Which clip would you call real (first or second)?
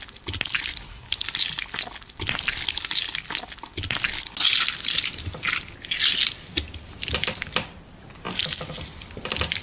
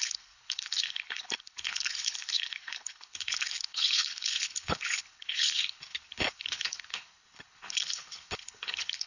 first